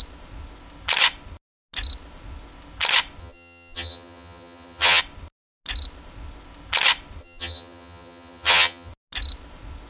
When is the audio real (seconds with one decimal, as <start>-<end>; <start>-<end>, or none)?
0.0-3.2; 5.0-7.2; 8.9-9.9